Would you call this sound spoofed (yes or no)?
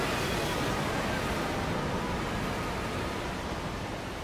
no